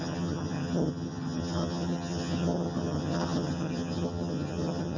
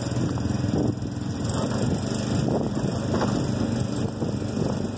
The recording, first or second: second